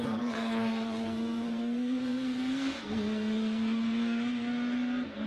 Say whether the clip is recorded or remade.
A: remade